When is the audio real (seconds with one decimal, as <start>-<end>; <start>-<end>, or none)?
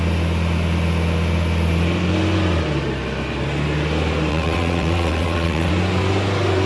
0.0-4.3; 5.7-6.7